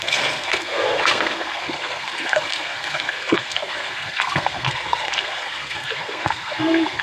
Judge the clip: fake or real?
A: fake